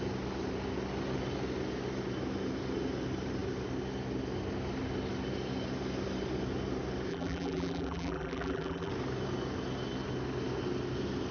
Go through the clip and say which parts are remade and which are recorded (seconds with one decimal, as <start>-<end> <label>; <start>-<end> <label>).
0.0-7.1 recorded; 7.1-8.9 remade; 8.9-11.3 recorded